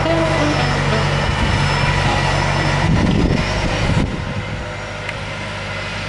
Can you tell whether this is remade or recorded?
recorded